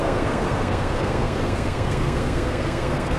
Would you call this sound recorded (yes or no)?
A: no